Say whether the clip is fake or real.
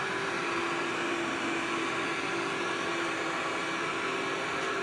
real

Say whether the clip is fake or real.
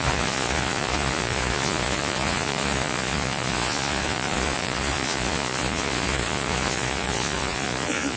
fake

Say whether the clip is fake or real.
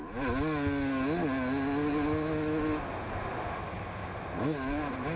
real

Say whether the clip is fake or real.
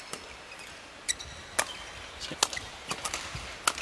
real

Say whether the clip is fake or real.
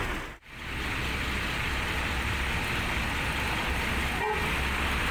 real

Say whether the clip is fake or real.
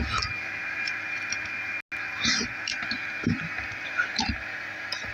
real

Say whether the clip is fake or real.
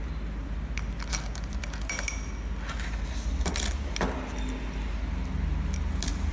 real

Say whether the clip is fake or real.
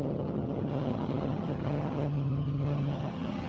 fake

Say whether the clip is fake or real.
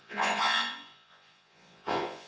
fake